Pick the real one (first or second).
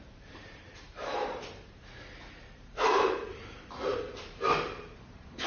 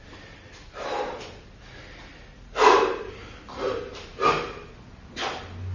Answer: second